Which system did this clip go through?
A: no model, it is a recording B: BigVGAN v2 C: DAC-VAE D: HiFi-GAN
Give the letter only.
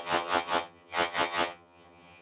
D